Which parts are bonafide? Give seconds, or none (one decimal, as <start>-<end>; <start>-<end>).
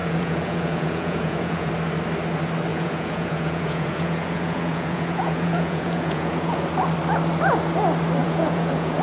1.7-2.7; 6.6-8.2